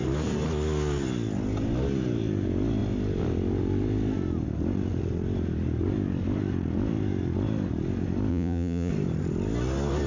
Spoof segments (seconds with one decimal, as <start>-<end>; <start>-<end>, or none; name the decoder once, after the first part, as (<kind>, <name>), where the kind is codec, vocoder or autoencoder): 8.3-8.9 (vocoder, Vocos)